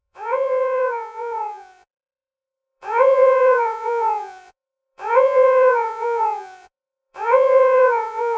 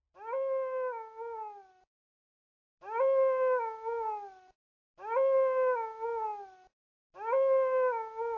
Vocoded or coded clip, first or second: first